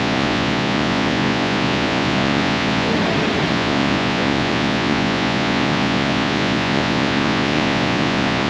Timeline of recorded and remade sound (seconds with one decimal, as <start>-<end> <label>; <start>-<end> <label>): 0.0-2.9 remade; 2.9-3.5 recorded; 3.5-8.5 remade